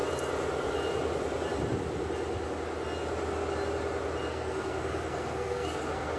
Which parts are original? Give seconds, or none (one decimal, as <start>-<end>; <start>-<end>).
0.0-4.3